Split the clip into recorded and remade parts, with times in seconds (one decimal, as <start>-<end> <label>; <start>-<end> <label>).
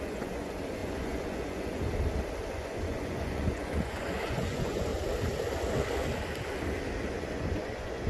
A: 0.0-1.9 remade; 1.9-2.5 recorded; 2.5-4.9 remade; 4.9-7.1 recorded; 7.1-8.1 remade